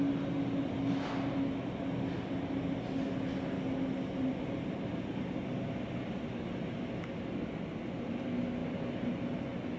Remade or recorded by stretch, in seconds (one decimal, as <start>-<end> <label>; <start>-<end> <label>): 0.0-9.8 recorded